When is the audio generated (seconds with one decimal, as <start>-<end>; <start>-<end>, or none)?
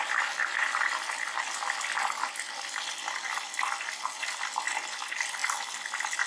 none